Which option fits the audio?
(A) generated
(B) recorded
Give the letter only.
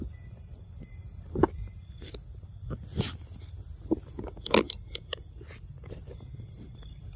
B